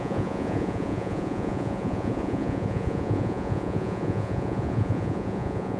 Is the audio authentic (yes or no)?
no